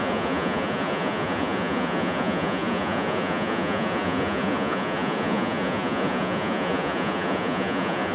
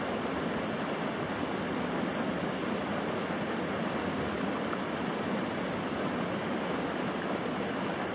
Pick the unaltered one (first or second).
second